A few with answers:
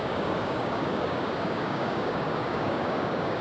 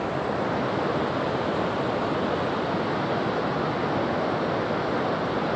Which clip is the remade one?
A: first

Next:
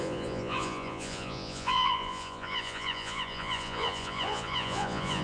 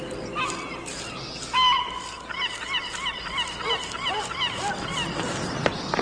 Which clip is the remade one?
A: first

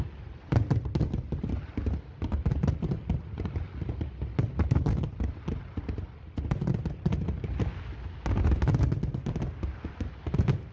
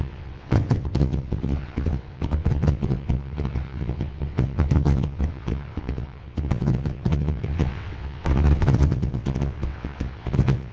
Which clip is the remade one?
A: second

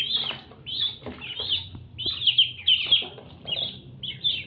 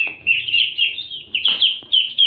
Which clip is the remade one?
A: second